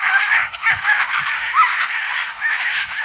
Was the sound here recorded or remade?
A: remade